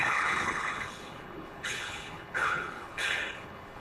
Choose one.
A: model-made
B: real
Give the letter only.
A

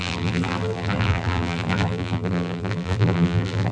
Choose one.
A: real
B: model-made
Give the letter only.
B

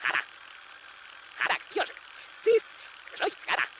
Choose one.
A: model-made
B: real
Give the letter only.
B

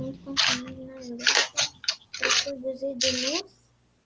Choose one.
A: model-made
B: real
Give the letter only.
B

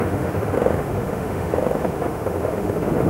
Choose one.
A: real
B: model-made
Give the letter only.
B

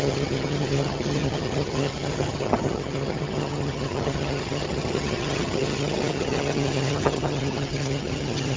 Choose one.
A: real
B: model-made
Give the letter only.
B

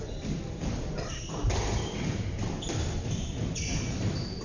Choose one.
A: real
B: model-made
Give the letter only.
A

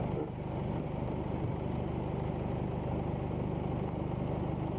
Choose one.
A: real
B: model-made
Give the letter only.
A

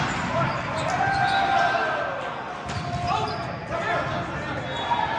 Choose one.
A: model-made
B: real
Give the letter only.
B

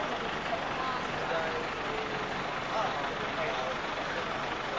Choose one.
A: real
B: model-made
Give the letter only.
A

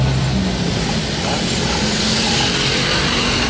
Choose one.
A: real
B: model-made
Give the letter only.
A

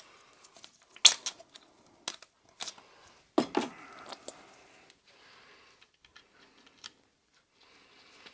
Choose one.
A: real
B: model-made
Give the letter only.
A